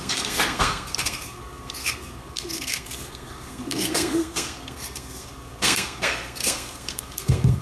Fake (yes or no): yes